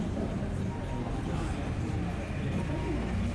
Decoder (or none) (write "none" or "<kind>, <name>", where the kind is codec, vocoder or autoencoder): none